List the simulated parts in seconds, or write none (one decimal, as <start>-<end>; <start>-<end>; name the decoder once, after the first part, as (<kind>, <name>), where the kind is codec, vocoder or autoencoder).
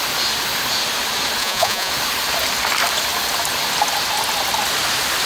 1.4-1.9 (vocoder, Vocos)